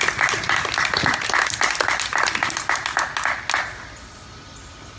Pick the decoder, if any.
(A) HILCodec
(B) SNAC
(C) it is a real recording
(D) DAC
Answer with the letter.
C